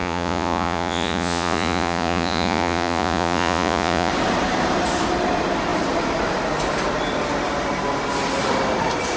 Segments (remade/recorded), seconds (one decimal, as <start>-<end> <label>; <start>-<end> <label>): 0.0-4.1 remade; 4.1-9.2 recorded